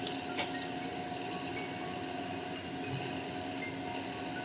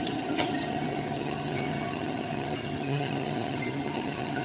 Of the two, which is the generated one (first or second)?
second